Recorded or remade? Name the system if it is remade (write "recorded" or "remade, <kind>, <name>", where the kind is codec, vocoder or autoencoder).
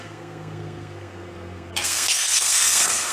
remade, codec, SNAC